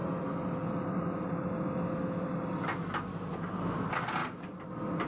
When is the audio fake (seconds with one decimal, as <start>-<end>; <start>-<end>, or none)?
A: 3.1-3.8